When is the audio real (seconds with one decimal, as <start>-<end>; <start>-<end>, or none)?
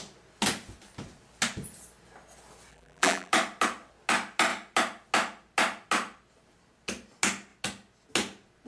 0.0-2.7; 3.3-8.7